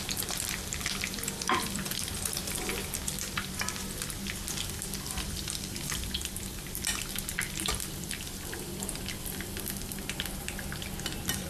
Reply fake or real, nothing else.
fake